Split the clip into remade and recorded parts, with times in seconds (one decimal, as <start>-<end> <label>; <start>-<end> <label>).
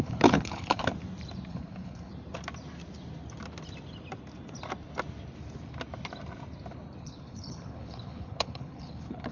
0.0-0.8 remade; 0.8-1.5 recorded; 1.5-2.1 remade; 2.1-7.0 recorded; 7.0-9.3 remade